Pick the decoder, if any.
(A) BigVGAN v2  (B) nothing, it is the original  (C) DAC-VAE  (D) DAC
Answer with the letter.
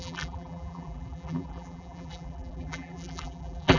A